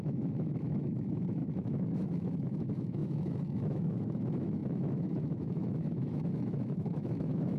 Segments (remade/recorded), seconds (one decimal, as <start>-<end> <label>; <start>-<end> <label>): 0.0-7.6 remade